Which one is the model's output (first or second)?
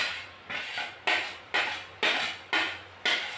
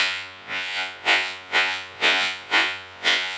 second